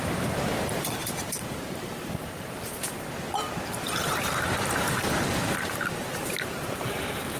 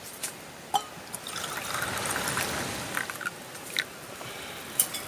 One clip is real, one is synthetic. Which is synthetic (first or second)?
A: first